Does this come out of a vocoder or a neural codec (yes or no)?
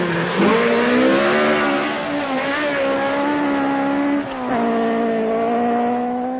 no